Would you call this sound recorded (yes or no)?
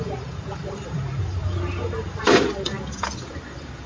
no